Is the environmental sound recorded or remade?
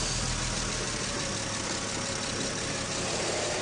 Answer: recorded